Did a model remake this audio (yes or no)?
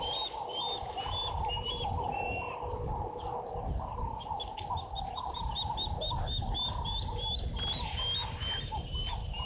no